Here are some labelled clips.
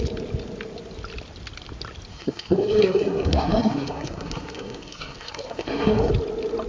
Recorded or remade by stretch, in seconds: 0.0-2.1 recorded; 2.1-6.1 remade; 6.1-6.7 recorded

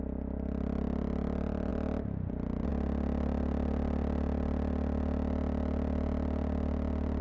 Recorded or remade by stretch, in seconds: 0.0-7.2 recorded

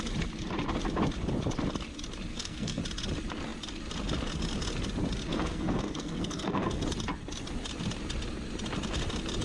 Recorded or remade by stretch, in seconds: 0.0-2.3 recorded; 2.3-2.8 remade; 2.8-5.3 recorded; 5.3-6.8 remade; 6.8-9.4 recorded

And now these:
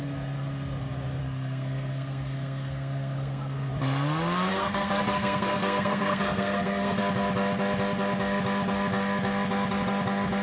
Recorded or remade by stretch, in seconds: 0.0-1.2 recorded; 1.2-3.7 remade; 3.7-4.5 recorded; 4.5-7.0 remade; 7.0-10.4 recorded

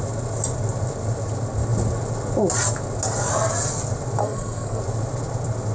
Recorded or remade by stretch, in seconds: 0.0-4.2 recorded; 4.2-4.8 remade; 4.8-5.7 recorded

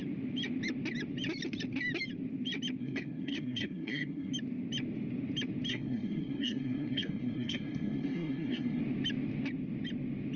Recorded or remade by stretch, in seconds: 0.0-2.8 recorded; 2.8-4.3 remade; 4.3-5.7 recorded; 5.7-8.8 remade; 8.8-10.4 recorded

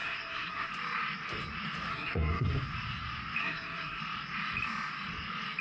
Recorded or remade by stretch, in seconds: 0.0-0.7 remade; 0.7-1.9 recorded; 1.9-2.5 remade; 2.5-3.4 recorded; 3.4-4.0 remade; 4.0-5.6 recorded

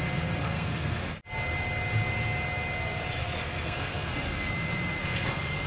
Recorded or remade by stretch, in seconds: 0.0-0.4 recorded; 0.4-1.0 remade; 1.0-3.2 recorded; 3.2-4.5 remade; 4.5-5.0 recorded; 5.0-5.7 remade